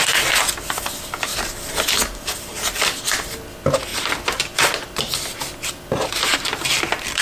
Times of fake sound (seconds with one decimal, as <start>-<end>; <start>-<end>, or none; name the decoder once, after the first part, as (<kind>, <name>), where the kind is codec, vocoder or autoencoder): 1.3-1.9 (vocoder, BigVGAN v2); 6.3-7.2